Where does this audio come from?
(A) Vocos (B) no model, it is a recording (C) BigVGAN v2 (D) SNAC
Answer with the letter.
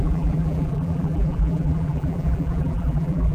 C